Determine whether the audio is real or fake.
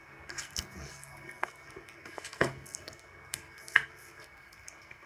fake